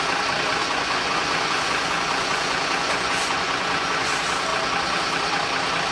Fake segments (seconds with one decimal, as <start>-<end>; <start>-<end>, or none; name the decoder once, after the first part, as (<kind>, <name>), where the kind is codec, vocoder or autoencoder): 0.6-4.1 (vocoder, Vocos)